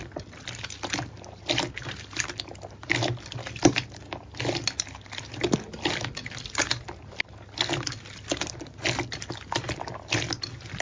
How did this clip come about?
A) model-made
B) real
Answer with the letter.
B